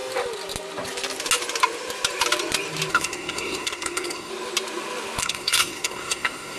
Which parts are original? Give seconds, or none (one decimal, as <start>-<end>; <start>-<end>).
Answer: 0.0-2.9; 4.3-5.2